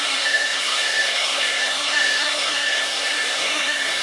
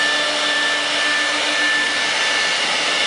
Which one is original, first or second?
second